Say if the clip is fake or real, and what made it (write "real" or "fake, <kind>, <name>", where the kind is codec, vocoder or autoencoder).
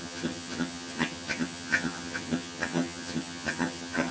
fake, vocoder, HiFi-GAN